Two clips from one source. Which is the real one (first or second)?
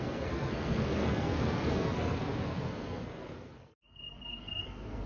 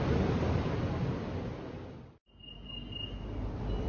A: second